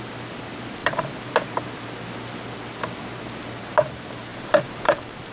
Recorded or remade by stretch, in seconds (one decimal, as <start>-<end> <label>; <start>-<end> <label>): 0.0-0.8 recorded; 0.8-1.3 remade; 1.3-4.3 recorded; 4.3-5.3 remade